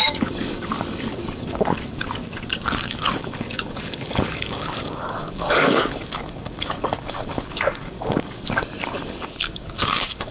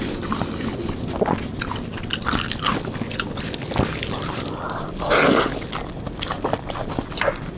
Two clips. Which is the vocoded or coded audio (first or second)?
first